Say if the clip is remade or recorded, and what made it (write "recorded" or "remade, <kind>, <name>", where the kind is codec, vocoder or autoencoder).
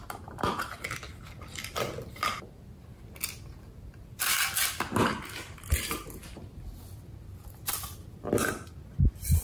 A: recorded